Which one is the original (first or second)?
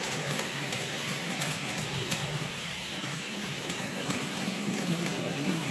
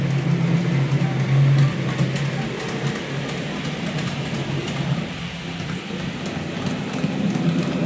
second